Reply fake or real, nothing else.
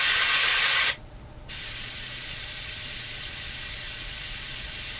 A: fake